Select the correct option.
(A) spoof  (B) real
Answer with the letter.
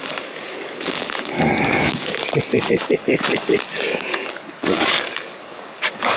A